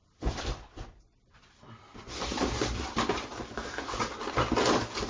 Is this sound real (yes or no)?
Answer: no